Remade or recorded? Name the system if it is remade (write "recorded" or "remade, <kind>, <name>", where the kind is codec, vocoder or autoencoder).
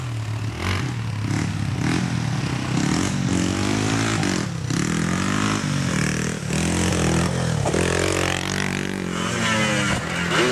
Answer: recorded